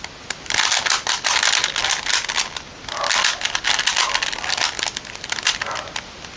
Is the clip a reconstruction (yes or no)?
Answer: no